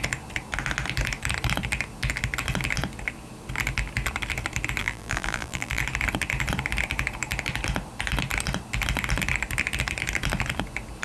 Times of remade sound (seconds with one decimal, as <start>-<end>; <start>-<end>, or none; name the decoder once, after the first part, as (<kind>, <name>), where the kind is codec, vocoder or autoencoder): 4.8-5.8 (vocoder, BigVGAN v2)